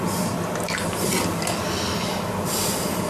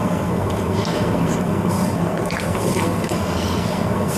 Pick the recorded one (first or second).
first